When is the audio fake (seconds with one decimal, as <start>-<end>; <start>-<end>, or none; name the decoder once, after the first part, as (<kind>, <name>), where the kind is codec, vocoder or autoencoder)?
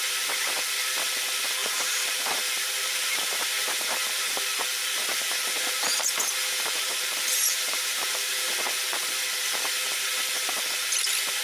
1.6-4.4 (vocoder, BigVGAN v2); 5.1-8.5